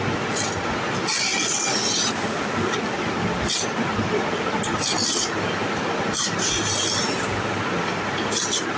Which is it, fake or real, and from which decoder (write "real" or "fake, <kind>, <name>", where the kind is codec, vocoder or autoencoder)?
real